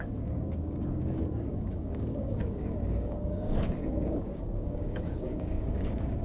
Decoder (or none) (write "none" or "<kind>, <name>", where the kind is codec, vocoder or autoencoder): codec, DAC